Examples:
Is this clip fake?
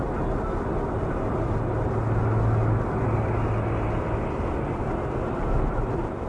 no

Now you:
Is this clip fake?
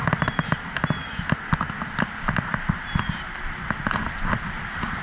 no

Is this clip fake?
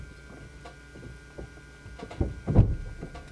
no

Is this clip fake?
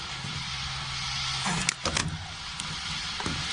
no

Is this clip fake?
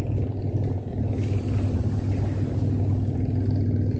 no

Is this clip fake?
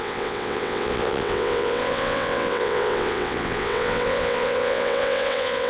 yes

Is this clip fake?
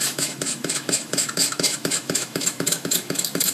yes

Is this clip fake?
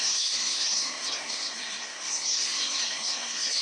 yes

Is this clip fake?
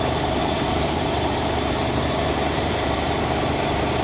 yes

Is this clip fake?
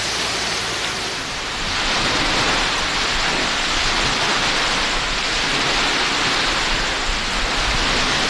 no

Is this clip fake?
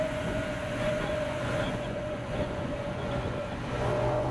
yes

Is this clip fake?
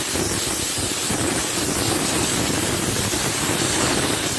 yes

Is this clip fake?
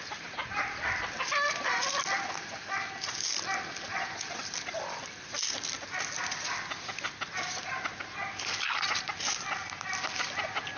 no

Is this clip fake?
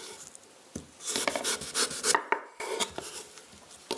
no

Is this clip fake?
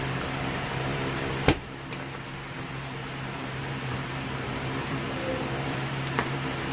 yes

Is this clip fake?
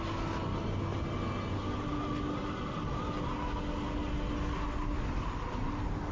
no